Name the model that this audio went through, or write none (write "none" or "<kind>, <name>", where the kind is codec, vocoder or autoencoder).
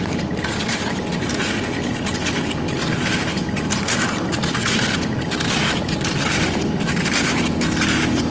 none